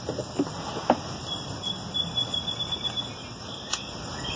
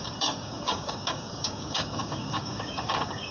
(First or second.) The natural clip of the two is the first